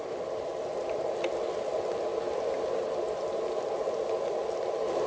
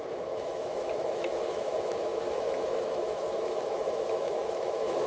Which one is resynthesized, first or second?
second